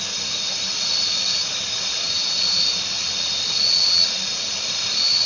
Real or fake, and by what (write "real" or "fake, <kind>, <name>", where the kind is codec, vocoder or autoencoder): real